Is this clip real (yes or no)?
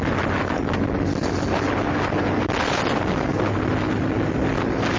yes